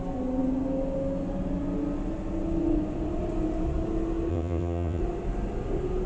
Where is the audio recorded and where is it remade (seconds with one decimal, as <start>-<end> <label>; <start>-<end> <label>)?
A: 0.0-4.3 recorded; 4.3-5.0 remade; 5.0-6.1 recorded